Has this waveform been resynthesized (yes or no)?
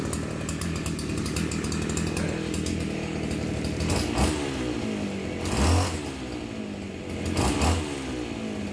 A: no